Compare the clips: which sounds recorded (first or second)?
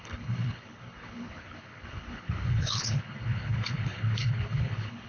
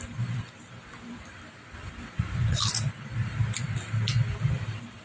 second